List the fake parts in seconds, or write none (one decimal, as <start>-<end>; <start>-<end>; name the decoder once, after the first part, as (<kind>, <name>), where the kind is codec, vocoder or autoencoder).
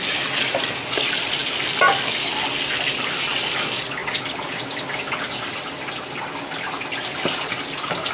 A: none